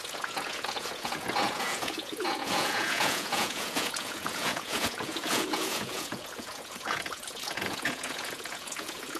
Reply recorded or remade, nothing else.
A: remade